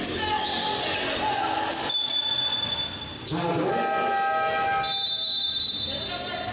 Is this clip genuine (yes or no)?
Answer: yes